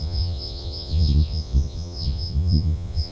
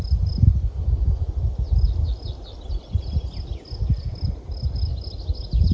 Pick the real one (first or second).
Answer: second